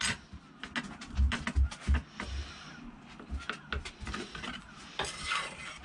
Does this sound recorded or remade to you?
recorded